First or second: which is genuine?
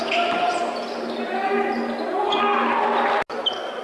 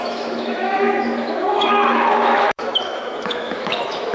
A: first